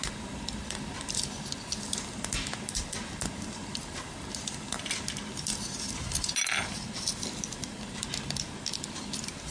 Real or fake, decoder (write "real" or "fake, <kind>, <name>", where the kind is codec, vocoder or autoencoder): real